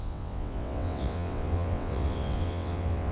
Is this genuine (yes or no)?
no